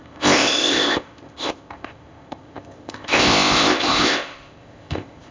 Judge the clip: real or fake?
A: fake